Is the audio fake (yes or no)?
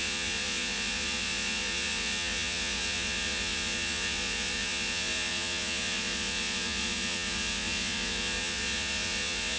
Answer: yes